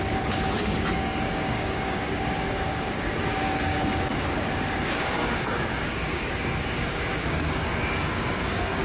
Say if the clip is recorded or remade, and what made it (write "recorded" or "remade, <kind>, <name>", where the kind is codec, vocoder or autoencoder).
remade, codec, DAC